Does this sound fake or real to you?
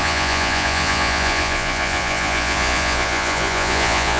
fake